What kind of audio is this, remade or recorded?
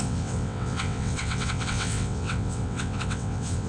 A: remade